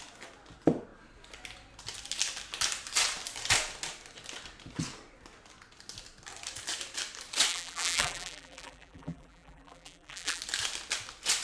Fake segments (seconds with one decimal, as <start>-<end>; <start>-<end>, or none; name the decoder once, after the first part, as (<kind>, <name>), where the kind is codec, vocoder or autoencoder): 7.5-10.4 (vocoder, BigVGAN v2)